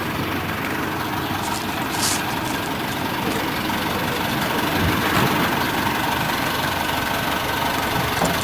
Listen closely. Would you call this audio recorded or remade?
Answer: remade